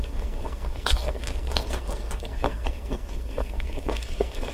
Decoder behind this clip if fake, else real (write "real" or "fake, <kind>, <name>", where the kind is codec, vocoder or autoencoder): fake, codec, SNAC